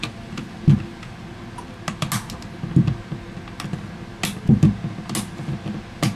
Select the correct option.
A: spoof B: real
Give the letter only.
B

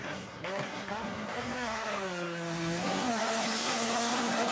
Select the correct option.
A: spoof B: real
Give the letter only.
A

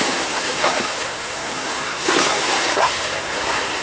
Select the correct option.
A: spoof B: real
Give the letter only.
A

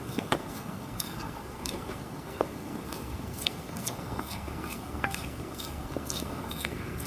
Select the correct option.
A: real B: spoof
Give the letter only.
B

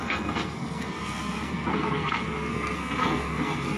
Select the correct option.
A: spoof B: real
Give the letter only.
A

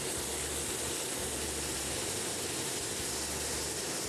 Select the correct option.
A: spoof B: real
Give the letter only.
B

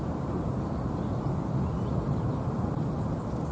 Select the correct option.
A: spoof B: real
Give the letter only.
B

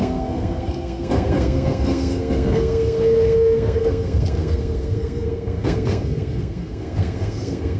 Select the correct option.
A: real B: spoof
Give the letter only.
B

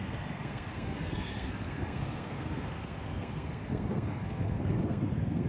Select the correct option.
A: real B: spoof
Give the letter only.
B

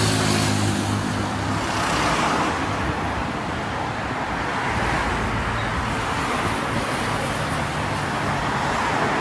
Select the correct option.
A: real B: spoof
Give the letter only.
A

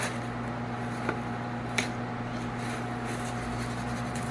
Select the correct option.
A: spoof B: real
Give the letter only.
B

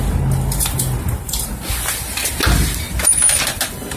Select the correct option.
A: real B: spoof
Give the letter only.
A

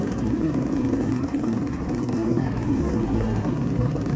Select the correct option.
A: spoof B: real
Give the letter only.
A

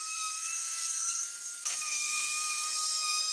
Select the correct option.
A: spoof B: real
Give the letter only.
A